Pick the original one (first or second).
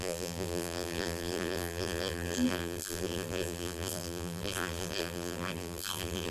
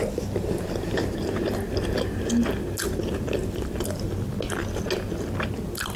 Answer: second